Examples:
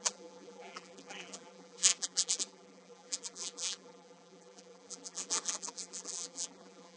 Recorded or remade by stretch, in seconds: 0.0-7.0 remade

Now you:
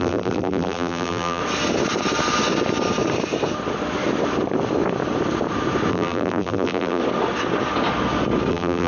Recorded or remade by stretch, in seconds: 0.0-1.4 remade; 1.4-5.9 recorded; 5.9-7.0 remade; 7.0-8.5 recorded; 8.5-8.9 remade

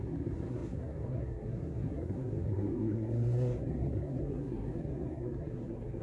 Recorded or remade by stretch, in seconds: 0.0-6.0 remade

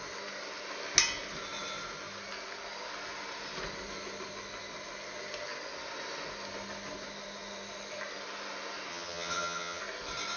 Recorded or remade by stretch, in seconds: 0.0-8.9 recorded; 8.9-9.8 remade; 9.8-10.4 recorded

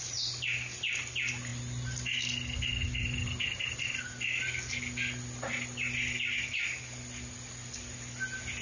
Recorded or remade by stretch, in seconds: 0.0-8.6 recorded

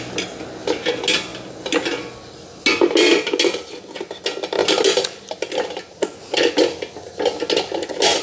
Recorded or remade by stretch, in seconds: 0.0-8.2 recorded